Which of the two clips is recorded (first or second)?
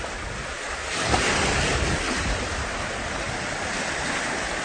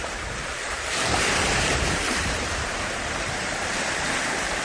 first